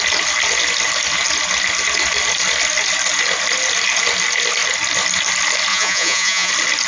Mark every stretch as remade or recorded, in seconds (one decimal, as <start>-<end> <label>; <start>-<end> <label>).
0.0-5.7 recorded; 5.7-6.5 remade; 6.5-6.9 recorded